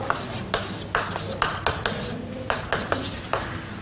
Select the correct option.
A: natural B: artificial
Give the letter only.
A